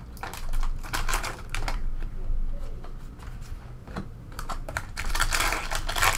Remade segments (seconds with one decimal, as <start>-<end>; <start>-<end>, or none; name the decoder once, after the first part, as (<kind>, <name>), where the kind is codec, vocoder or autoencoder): 1.1-1.9 (vocoder, BigVGAN v2); 3.8-5.1